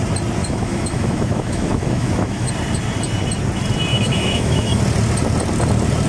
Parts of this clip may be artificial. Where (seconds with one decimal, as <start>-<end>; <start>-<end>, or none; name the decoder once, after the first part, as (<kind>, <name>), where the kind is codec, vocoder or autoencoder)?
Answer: 0.4-2.5 (autoencoder, DAC-VAE); 3.9-4.8

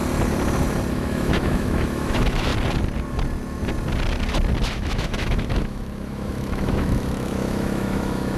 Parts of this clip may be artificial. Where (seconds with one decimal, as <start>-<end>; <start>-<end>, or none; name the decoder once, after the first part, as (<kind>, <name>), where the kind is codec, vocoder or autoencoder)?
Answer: 0.9-2.5 (autoencoder, DAC-VAE); 4.7-8.4